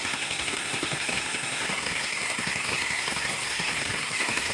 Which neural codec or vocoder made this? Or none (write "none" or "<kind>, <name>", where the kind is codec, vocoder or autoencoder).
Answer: codec, SNAC